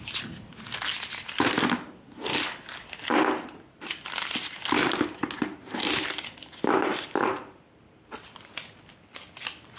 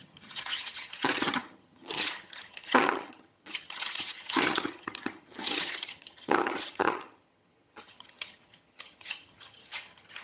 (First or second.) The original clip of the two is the first